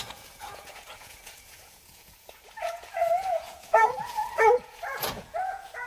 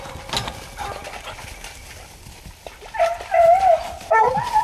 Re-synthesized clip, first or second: first